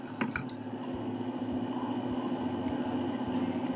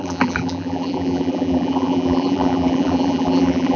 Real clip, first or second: first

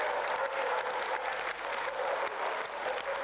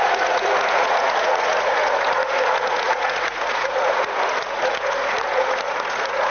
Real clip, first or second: first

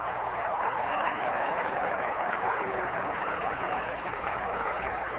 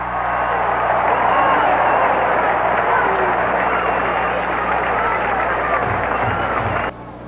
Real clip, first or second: second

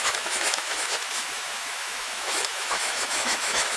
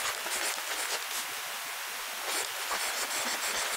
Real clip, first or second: second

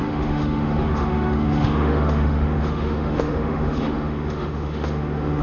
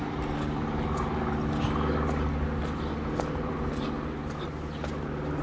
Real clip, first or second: second